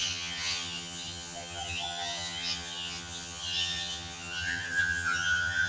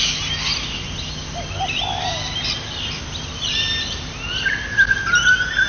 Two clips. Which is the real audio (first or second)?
second